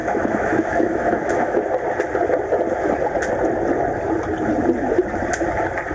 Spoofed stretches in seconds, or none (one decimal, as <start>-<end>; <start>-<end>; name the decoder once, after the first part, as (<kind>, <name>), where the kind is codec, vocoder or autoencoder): 0.0-1.6 (autoencoder, DAC-VAE)